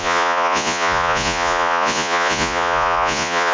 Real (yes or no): no